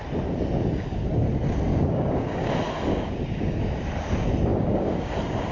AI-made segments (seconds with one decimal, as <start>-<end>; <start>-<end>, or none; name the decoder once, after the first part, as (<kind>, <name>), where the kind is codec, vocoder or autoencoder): 1.7-2.5 (codec, DAC); 2.9-3.6; 4.5-5.1